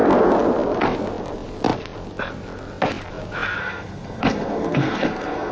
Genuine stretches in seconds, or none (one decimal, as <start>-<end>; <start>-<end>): 0.0-3.6